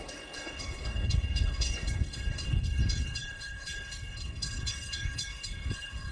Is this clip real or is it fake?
fake